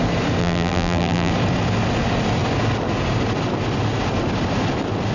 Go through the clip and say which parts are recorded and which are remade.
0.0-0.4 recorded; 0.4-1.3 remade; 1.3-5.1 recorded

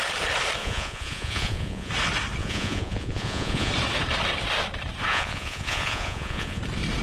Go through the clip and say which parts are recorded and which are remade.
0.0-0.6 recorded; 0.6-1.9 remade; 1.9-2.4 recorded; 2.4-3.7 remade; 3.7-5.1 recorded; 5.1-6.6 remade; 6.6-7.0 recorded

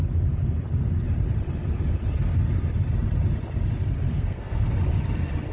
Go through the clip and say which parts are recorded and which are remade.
0.0-4.1 recorded; 4.1-4.7 remade; 4.7-5.5 recorded

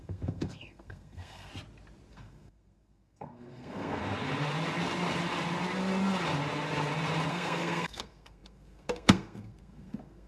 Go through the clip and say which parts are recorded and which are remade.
0.0-1.5 remade; 1.5-2.1 recorded; 2.1-4.0 remade; 4.0-7.3 recorded; 7.3-10.3 remade

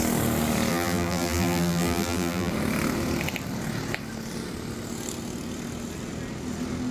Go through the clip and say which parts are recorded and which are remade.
0.0-0.7 recorded; 0.7-2.5 remade; 2.5-6.9 recorded

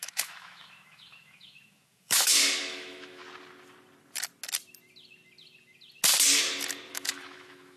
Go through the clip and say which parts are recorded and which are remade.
0.0-3.2 remade; 3.2-6.9 recorded; 6.9-7.8 remade

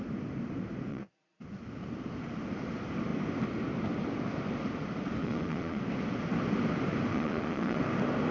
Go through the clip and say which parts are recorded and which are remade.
0.0-0.9 recorded; 0.9-1.4 remade; 1.4-5.2 recorded; 5.2-5.8 remade; 5.8-7.1 recorded; 7.1-7.8 remade; 7.8-8.3 recorded